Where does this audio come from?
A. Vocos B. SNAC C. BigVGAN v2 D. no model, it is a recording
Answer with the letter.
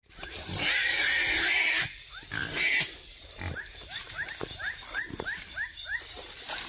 D